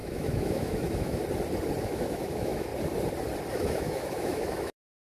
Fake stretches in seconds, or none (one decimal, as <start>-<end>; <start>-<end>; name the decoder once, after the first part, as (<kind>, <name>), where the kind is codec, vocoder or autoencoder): 0.0-1.2 (autoencoder, DAC-VAE); 1.8-2.7; 3.5-5.1